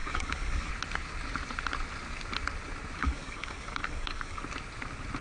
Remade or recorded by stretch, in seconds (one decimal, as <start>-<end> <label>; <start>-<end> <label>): 0.0-0.7 remade; 0.7-3.0 recorded; 3.0-4.4 remade; 4.4-5.2 recorded